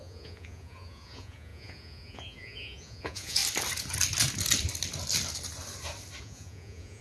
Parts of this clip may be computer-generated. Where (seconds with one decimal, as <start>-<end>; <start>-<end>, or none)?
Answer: 0.0-3.4; 6.2-7.0